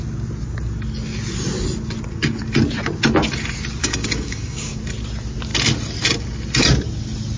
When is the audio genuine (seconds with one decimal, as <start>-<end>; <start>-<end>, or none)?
0.0-3.8; 4.8-7.4